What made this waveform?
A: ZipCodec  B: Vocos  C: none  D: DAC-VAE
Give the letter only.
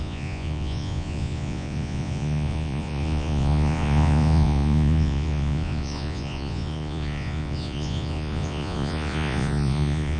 B